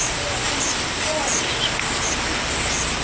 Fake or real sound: real